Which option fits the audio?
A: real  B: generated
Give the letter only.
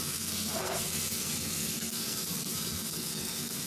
B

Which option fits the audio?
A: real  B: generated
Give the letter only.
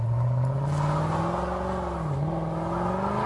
A